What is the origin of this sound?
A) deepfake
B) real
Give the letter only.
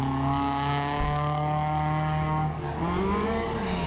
A